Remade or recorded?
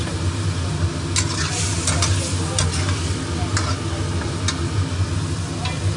recorded